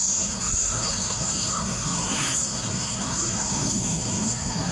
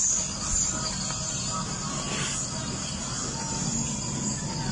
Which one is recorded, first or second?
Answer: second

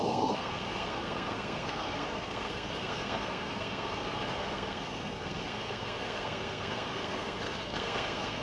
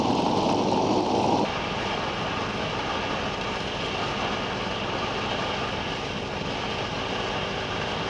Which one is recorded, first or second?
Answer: second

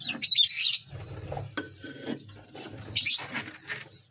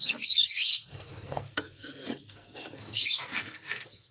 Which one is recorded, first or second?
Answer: first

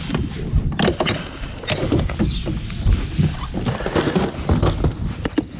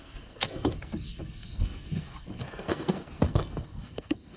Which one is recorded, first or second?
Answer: first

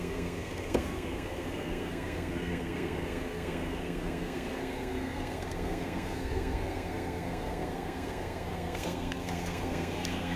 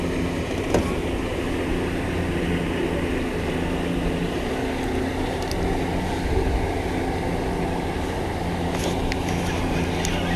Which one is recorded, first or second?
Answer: second